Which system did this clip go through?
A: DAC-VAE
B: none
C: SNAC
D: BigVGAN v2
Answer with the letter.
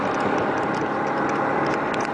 B